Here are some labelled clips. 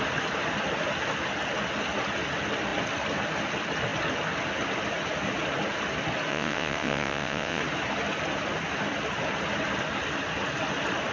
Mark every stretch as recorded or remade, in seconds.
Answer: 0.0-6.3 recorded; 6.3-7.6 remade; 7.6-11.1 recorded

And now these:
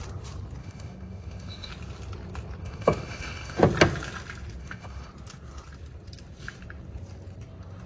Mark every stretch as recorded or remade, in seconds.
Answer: 0.0-0.6 recorded; 0.6-1.7 remade; 1.7-2.6 recorded; 2.6-3.6 remade; 3.6-4.6 recorded; 4.6-5.1 remade; 5.1-7.9 recorded

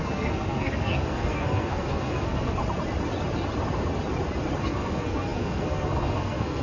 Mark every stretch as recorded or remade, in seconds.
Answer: 0.0-2.6 remade; 2.6-4.6 recorded; 4.6-6.6 remade

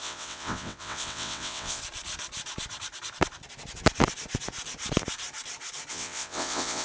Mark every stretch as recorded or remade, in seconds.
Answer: 0.0-1.8 remade; 1.8-5.9 recorded; 5.9-6.8 remade

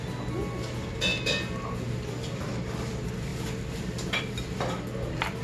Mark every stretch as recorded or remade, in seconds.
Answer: 0.0-5.4 recorded